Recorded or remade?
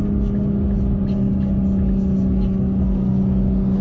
recorded